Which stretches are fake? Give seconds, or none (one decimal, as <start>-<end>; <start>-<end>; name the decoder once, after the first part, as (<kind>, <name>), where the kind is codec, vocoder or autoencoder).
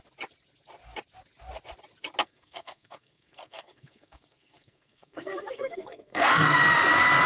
2.2-6.6 (codec, SNAC)